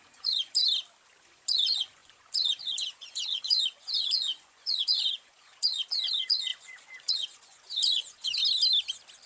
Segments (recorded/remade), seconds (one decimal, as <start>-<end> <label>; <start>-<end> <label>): 0.0-0.6 remade; 0.6-1.2 recorded; 1.2-8.4 remade; 8.4-9.3 recorded

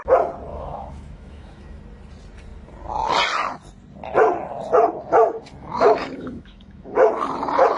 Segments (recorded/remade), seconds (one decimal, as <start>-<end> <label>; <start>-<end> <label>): 0.0-0.5 recorded; 0.5-1.8 remade; 1.8-5.6 recorded; 5.6-7.1 remade; 7.1-7.8 recorded

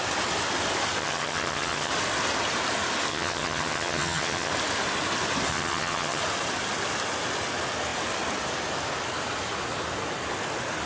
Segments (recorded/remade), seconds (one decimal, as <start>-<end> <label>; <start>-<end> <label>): 0.0-1.0 recorded; 1.0-1.9 remade; 1.9-3.1 recorded; 3.1-4.5 remade; 4.5-5.5 recorded; 5.5-6.2 remade; 6.2-10.9 recorded